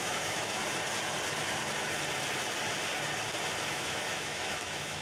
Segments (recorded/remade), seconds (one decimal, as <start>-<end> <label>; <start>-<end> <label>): 0.0-0.6 remade; 0.6-3.6 recorded; 3.6-5.0 remade